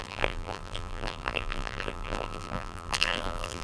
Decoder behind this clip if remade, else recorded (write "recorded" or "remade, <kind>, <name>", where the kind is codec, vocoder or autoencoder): remade, vocoder, BigVGAN v2